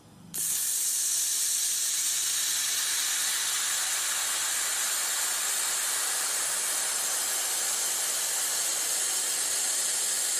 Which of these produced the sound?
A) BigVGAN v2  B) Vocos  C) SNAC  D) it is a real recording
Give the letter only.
D